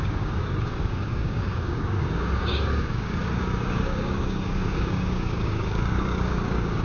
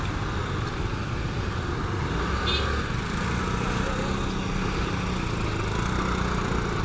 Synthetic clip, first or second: first